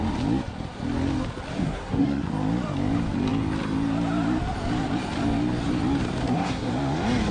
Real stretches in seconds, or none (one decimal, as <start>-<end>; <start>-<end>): 0.0-1.6; 2.3-6.2; 6.7-7.3